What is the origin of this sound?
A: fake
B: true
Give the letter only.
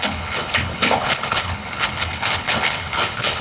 A